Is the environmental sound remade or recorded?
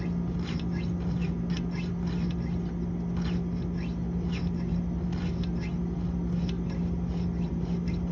recorded